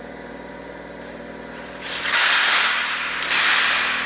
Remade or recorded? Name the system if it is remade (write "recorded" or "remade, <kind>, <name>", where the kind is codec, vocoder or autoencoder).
recorded